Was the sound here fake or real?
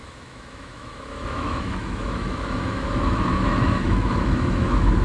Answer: fake